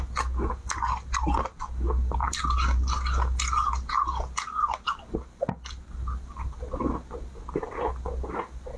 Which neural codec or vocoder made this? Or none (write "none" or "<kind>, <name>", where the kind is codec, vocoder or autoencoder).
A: none